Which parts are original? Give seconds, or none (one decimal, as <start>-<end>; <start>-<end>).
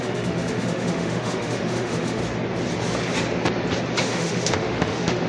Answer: 2.2-4.0